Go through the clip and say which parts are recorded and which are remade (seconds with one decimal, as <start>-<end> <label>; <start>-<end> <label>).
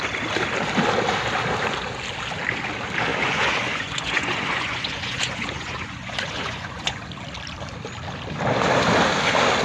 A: 0.0-3.1 recorded; 3.1-7.1 remade; 7.1-9.6 recorded